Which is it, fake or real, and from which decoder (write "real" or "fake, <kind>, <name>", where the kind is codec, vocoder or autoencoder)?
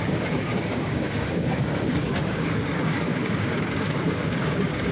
fake, codec, DAC